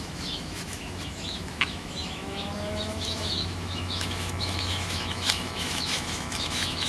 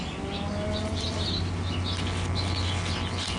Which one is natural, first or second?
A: second